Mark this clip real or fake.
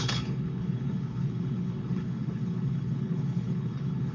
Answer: fake